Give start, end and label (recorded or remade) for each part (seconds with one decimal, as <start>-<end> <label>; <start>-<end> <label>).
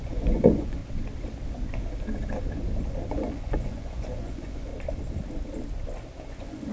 0.0-0.8 remade; 0.8-3.1 recorded; 3.1-4.7 remade; 4.7-6.3 recorded; 6.3-6.7 remade